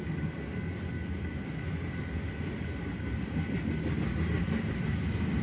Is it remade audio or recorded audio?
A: recorded